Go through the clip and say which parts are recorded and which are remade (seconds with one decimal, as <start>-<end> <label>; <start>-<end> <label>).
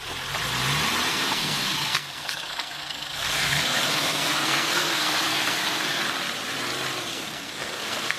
0.0-1.1 recorded; 1.1-6.0 remade; 6.0-7.1 recorded; 7.1-8.2 remade